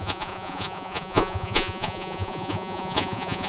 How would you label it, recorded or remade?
remade